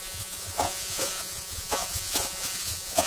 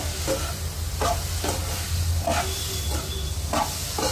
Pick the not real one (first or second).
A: first